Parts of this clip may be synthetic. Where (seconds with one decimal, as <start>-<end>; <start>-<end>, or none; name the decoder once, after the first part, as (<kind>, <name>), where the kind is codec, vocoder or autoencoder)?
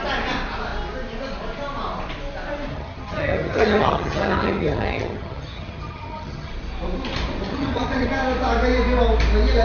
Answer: 2.7-6.5 (vocoder, HiFi-GAN); 7.5-8.1